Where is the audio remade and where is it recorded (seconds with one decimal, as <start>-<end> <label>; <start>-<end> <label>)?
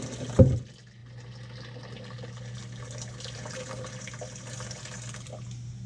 0.0-5.9 recorded